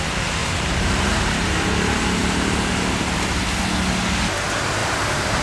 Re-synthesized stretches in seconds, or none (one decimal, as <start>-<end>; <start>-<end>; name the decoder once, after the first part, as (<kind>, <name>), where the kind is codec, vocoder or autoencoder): 0.4-1.5 (vocoder, BigVGAN v2); 2.2-2.7; 4.8-5.4